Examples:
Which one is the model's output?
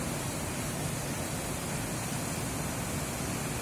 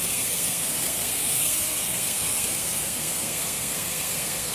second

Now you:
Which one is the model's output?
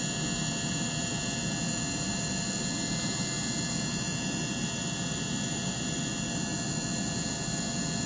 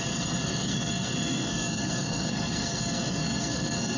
second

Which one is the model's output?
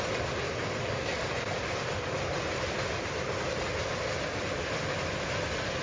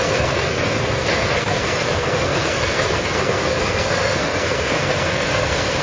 second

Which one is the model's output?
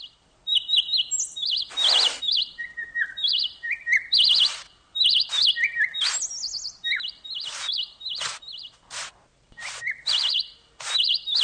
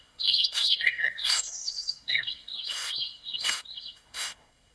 second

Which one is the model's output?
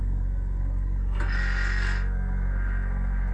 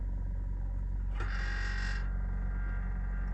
first